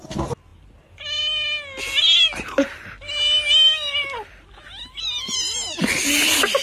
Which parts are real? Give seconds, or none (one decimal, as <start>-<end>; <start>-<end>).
0.0-6.6